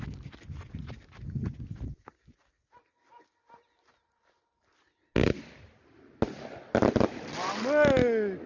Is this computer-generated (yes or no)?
no